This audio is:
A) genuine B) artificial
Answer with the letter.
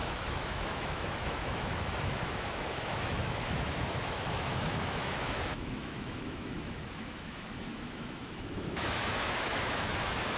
B